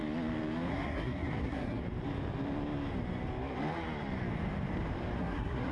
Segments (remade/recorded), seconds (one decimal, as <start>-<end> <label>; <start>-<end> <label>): 0.0-0.7 recorded; 0.7-1.8 remade; 1.8-5.2 recorded; 5.2-5.7 remade